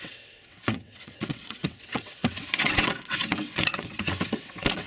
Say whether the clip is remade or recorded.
remade